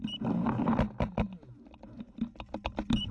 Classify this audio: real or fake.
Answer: real